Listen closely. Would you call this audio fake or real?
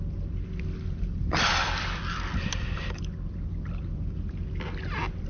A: real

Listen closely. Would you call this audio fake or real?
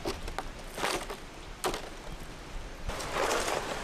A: real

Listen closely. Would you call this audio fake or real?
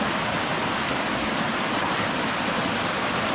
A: real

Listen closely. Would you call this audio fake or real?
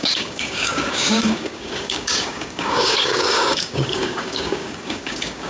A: fake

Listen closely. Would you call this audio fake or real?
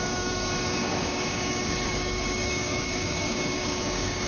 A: fake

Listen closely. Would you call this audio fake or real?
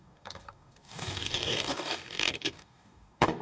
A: fake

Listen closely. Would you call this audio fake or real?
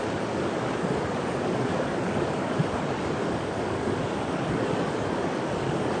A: fake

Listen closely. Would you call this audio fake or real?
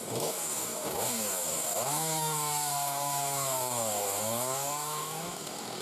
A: fake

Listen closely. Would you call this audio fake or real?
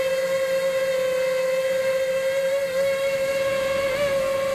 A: real